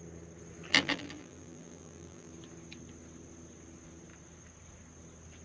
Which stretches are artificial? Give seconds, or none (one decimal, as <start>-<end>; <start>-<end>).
0.7-2.3